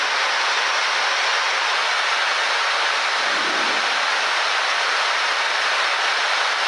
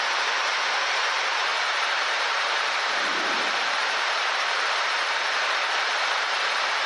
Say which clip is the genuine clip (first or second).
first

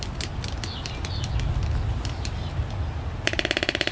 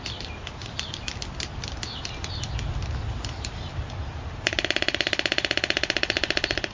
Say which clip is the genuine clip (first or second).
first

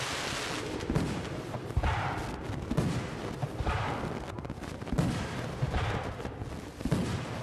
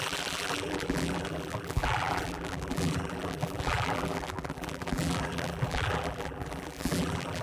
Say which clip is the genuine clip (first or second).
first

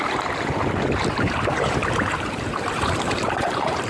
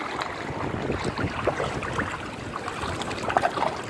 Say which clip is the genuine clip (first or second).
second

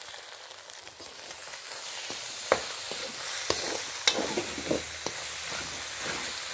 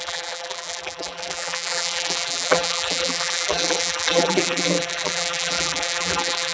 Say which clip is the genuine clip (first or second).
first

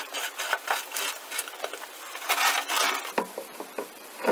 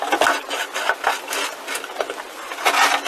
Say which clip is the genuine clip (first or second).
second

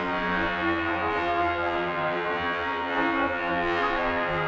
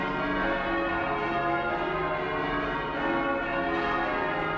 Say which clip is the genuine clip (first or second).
second